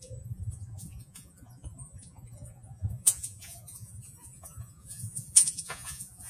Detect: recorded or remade remade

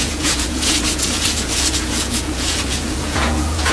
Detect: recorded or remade remade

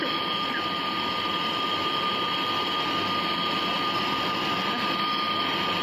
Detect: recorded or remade recorded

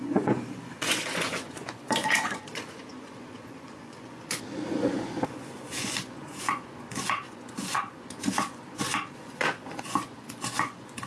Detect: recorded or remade remade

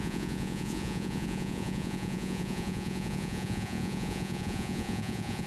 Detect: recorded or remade remade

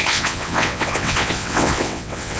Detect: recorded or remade remade